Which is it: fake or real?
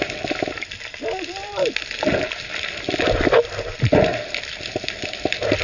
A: real